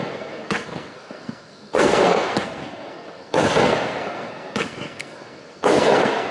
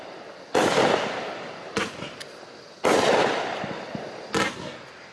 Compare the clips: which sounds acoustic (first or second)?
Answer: second